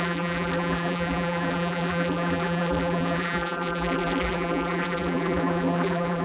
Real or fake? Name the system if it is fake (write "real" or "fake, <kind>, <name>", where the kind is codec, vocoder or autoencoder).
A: fake, vocoder, BigVGAN v2